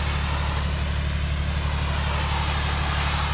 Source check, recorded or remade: recorded